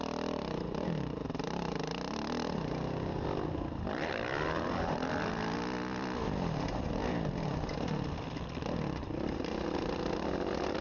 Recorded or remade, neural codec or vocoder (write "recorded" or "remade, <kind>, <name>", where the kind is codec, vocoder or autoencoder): recorded